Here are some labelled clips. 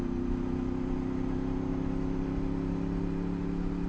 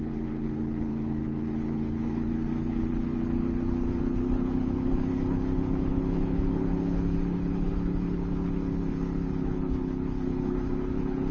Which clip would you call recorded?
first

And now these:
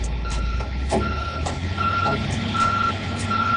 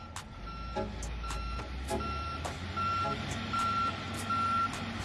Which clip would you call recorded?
second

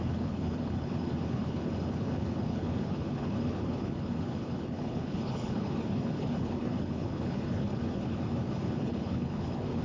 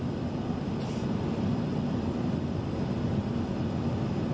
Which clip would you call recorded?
second